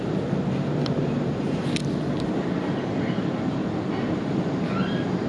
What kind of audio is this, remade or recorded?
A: recorded